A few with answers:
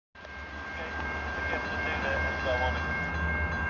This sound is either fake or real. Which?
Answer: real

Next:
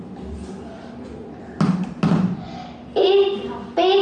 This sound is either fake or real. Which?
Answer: real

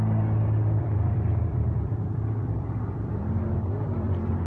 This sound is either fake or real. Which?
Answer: fake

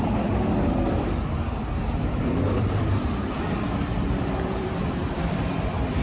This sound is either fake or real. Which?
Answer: fake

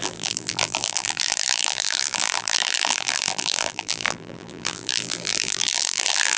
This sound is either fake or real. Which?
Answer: fake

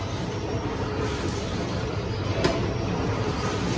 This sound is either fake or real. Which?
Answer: real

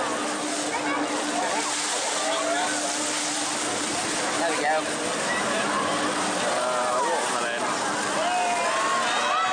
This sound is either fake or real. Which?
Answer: real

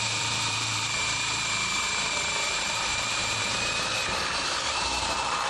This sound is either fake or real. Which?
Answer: fake